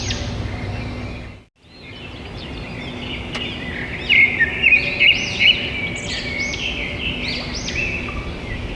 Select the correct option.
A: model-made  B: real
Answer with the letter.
B